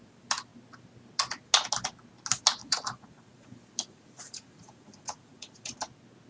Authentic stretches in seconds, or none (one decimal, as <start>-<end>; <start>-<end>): 0.0-2.6; 3.5-3.9; 5.8-6.3